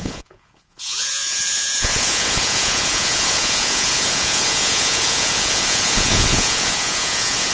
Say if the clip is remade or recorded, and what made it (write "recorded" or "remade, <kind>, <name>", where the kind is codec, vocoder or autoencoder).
remade, vocoder, Vocos